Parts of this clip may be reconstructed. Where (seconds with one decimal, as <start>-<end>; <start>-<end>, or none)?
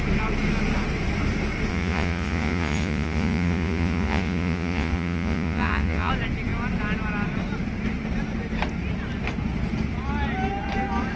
1.7-6.1